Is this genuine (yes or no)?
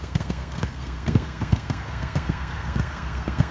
no